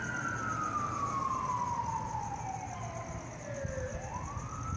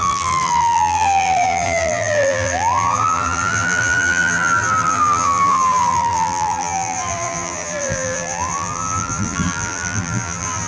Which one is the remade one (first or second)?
second